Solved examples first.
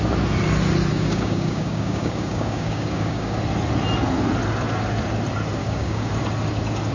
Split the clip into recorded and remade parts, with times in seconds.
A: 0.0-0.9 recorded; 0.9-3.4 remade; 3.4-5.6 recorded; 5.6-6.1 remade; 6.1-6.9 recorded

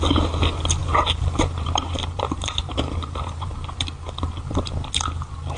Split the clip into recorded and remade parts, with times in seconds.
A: 0.0-0.8 recorded; 0.8-3.5 remade; 3.5-5.6 recorded

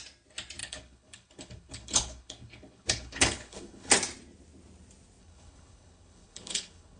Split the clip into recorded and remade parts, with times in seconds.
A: 0.0-0.6 recorded; 0.6-3.9 remade; 3.9-5.2 recorded; 5.2-7.0 remade

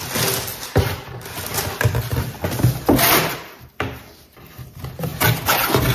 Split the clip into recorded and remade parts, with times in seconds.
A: 0.0-0.5 recorded; 0.5-1.1 remade; 1.1-5.9 recorded

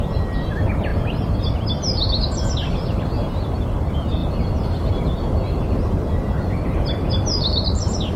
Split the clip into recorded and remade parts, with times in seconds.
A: 0.0-8.2 recorded

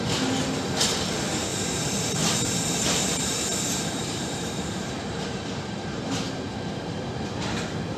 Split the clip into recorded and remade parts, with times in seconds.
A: 0.0-1.5 recorded; 1.5-6.3 remade; 6.3-8.0 recorded

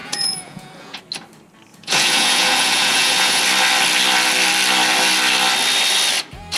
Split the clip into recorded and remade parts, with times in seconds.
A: 0.0-1.0 remade; 1.0-1.7 recorded; 1.7-3.4 remade; 3.4-6.6 recorded